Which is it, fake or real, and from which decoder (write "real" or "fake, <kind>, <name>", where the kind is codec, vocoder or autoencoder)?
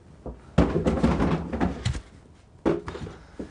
real